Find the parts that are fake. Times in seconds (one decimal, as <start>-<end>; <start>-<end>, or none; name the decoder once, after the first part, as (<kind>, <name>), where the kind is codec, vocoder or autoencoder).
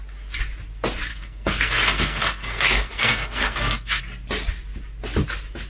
1.1-4.0 (codec, SNAC)